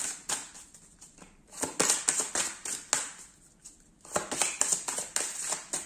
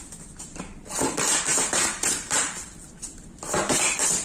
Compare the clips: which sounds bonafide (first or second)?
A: first